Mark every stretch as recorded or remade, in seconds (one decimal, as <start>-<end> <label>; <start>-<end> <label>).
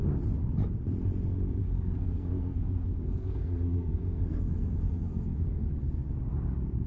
0.0-1.6 recorded; 1.6-5.7 remade; 5.7-6.9 recorded